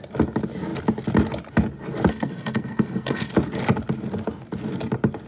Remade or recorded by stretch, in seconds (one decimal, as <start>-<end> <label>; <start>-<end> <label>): 0.0-2.1 recorded; 2.1-3.3 remade; 3.3-5.3 recorded